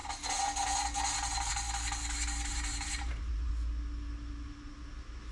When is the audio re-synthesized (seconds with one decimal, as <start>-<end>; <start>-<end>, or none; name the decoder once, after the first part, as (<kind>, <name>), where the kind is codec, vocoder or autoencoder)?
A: 2.5-3.5 (vocoder, BigVGAN v2)